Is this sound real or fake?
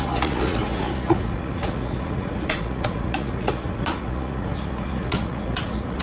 fake